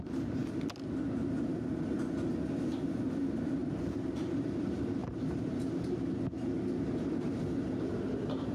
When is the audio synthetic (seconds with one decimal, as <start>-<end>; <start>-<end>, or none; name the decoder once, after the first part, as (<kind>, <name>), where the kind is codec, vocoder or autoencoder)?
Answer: 3.6-4.6 (vocoder, BigVGAN v2); 5.0-6.1

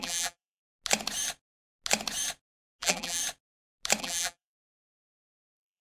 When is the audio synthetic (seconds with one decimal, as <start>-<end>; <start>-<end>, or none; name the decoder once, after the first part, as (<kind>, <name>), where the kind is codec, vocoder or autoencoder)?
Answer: 0.0-0.6 (vocoder, BigVGAN v2); 2.8-3.2; 4.0-5.8

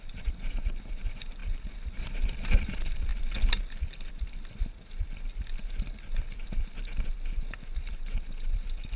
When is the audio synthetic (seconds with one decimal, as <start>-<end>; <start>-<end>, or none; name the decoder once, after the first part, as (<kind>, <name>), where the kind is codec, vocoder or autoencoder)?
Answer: 0.0-3.1 (vocoder, BigVGAN v2); 7.8-9.0